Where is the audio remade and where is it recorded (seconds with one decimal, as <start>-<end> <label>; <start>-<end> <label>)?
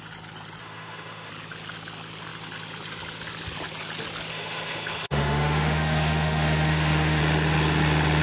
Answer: 0.0-0.6 recorded; 0.6-1.3 remade; 1.3-4.3 recorded; 4.3-7.2 remade; 7.2-8.2 recorded